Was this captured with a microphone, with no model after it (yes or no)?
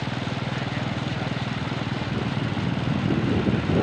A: yes